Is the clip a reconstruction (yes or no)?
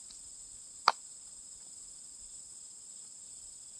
no